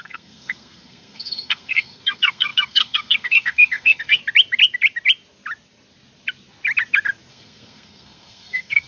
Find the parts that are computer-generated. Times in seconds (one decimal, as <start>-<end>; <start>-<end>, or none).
0.0-4.2; 7.3-8.9